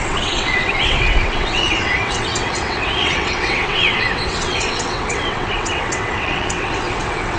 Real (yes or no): no